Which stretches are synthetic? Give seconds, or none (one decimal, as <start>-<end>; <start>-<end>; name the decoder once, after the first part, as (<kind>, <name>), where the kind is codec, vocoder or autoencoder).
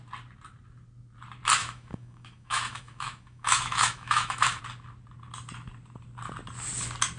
1.6-4.6 (autoencoder, DAC-VAE)